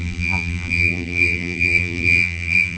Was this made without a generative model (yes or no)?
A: no